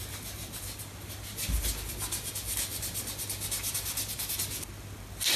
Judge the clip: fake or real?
real